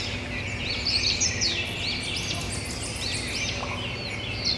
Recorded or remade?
recorded